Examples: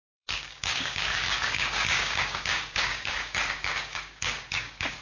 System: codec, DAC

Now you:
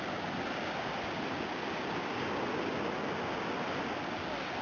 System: none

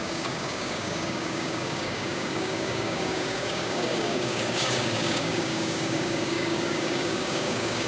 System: codec, DAC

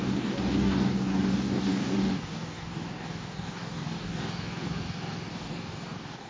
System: codec, DAC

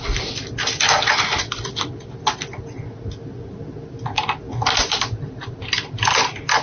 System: none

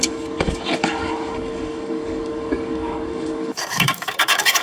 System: codec, DAC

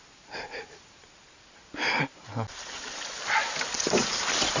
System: none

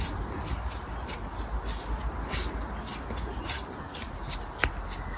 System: none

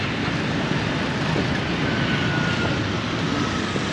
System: none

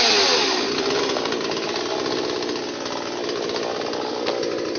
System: none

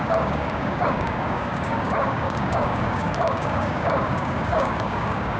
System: codec, DAC